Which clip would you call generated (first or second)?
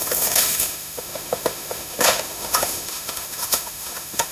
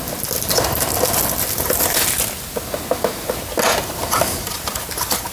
first